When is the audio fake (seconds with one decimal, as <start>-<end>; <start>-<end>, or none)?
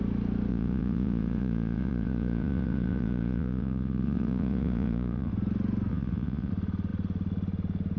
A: 0.5-5.3; 5.9-6.5